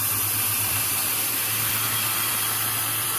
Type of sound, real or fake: fake